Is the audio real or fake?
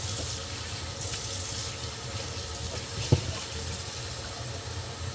real